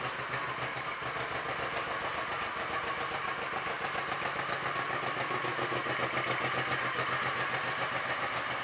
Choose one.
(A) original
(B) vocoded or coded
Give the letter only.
A